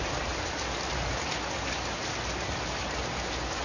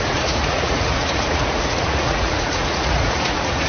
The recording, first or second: first